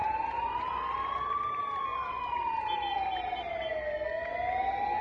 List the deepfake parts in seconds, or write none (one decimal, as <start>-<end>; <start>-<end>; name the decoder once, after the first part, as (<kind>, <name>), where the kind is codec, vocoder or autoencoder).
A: 0.0-1.1 (vocoder, BigVGAN v2); 1.9-3.5